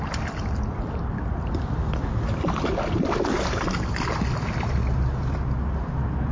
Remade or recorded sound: recorded